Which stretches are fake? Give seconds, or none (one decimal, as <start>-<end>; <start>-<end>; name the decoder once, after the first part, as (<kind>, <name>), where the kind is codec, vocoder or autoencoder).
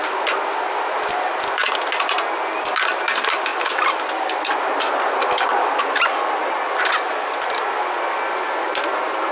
none